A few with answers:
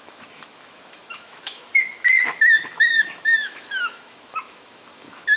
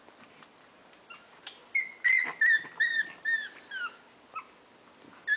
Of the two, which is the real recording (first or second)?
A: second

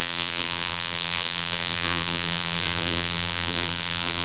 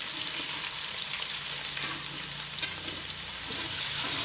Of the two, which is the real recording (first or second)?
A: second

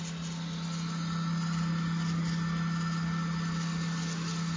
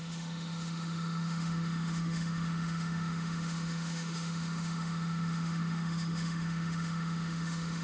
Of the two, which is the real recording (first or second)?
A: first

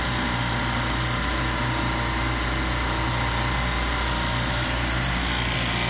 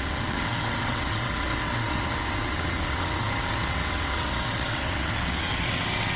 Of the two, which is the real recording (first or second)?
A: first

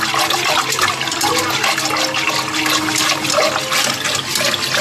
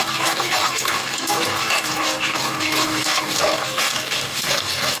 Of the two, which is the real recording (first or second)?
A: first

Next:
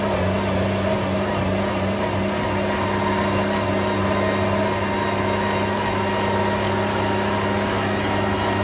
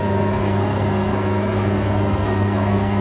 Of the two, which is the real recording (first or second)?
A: first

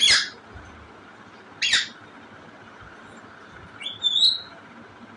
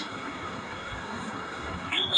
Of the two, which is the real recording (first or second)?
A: first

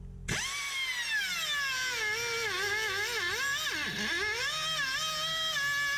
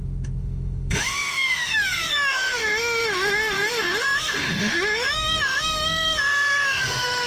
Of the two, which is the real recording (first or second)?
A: first